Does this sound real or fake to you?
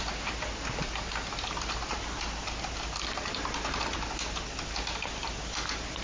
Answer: real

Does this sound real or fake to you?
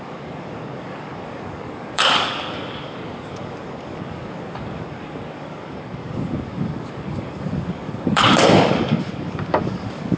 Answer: fake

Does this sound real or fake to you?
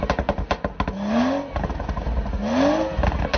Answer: real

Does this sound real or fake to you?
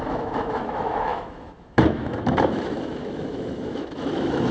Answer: fake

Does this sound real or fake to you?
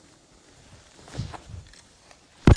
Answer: real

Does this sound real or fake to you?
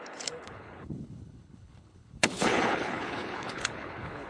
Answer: fake